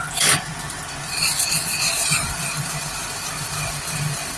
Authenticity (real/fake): real